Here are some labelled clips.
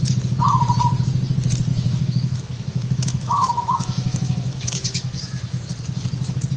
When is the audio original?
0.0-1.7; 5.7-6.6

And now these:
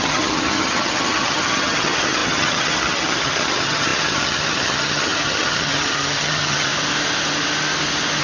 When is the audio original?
6.7-8.2

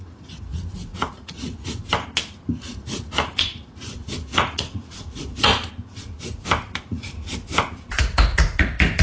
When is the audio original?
1.8-2.6; 5.5-6.8; 7.3-8.0